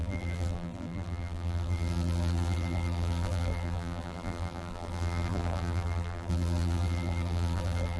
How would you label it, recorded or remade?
remade